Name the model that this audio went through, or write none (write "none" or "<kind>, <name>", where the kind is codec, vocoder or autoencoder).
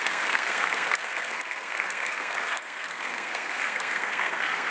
codec, SNAC